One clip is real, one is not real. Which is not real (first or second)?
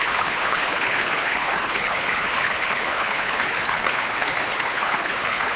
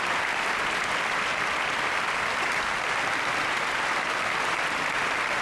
first